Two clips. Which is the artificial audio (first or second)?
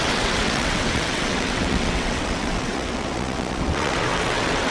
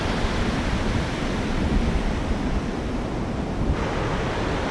first